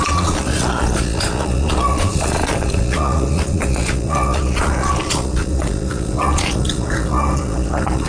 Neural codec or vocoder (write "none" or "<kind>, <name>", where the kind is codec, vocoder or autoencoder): vocoder, Vocos